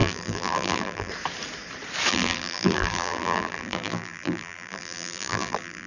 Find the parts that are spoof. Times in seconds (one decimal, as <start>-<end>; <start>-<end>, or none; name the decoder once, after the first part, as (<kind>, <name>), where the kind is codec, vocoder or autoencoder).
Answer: 0.0-1.1 (vocoder, BigVGAN v2); 2.1-5.9